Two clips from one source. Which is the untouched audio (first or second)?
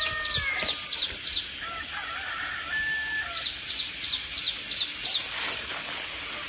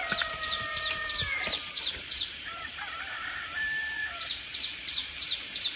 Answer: first